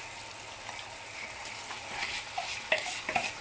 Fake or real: real